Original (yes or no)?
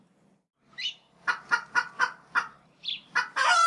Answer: yes